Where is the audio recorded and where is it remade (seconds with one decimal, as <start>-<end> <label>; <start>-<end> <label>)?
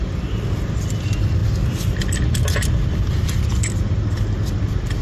0.0-5.0 recorded